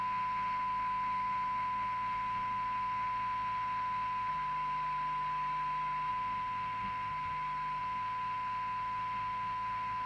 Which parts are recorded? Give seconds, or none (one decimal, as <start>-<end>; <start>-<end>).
4.3-6.1; 7.1-7.8